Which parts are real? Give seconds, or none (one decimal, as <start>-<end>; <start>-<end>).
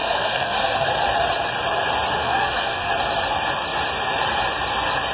0.9-2.2; 2.9-5.1